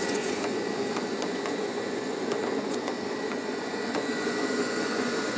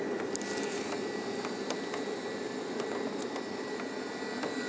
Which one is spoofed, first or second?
first